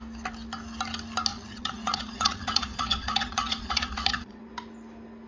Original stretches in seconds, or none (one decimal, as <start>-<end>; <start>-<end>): 0.0-1.3; 4.5-5.3